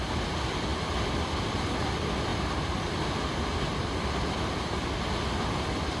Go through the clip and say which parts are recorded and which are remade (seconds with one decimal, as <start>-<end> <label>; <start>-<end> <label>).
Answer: 0.0-6.0 recorded